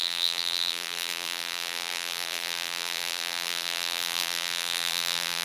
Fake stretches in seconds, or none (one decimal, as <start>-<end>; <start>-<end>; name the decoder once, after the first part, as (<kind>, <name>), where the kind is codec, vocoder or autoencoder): 0.0-5.4 (vocoder, BigVGAN v2)